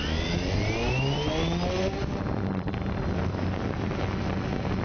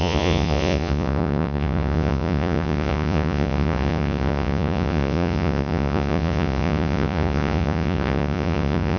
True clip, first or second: first